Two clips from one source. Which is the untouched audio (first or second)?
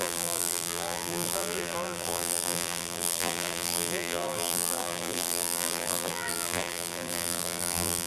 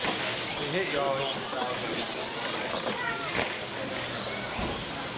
second